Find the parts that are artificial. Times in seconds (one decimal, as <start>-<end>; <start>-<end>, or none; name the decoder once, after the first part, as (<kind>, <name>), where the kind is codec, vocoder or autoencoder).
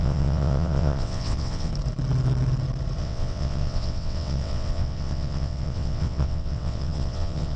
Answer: 0.0-1.7 (vocoder, WaveNeXt); 3.0-7.6